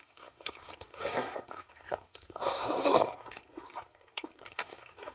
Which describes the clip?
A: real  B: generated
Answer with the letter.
B